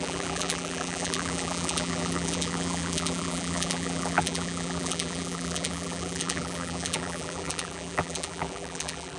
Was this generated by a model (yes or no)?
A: yes